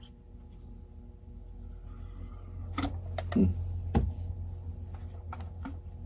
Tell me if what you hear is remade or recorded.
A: recorded